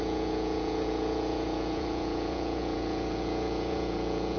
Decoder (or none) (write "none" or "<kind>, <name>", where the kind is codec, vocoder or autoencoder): vocoder, Vocos